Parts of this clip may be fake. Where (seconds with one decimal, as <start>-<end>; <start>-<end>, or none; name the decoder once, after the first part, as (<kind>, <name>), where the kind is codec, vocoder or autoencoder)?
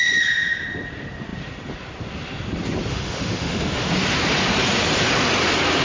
2.9-3.9 (autoencoder, DAC-VAE)